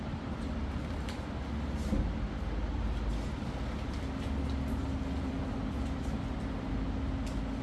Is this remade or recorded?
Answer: recorded